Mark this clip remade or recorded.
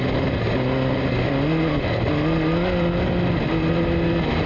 recorded